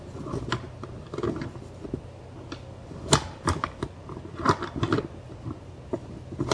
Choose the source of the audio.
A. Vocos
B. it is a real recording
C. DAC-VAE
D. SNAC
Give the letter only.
B